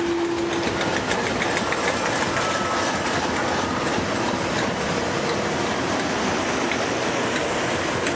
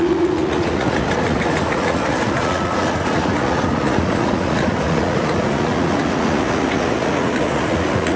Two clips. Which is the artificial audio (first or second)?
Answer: second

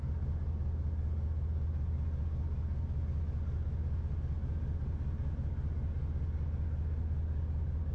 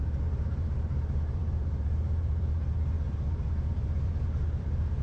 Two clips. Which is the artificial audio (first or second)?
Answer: second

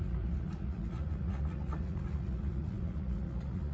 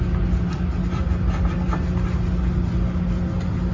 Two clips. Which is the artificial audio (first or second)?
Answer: first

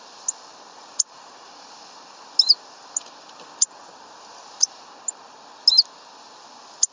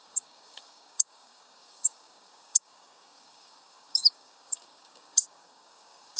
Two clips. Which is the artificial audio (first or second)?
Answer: second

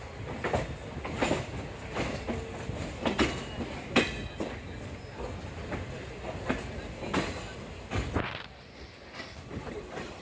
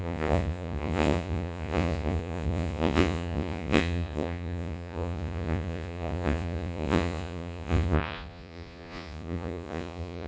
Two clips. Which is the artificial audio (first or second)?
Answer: second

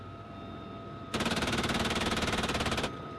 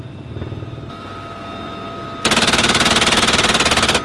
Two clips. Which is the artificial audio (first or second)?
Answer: first